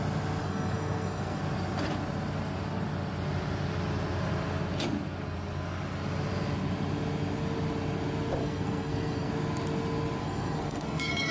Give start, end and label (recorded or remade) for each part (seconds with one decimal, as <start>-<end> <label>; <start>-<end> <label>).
0.0-0.4 recorded; 0.4-1.4 remade; 1.4-8.4 recorded; 8.4-9.3 remade; 9.3-10.2 recorded; 10.2-11.3 remade